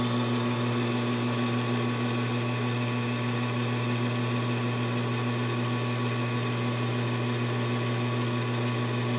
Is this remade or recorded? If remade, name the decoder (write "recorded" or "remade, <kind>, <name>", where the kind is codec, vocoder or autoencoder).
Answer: recorded